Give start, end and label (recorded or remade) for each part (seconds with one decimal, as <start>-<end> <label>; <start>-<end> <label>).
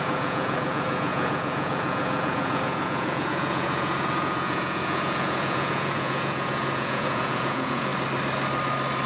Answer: 0.0-7.9 remade; 7.9-9.1 recorded